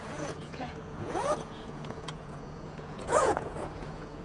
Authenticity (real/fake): fake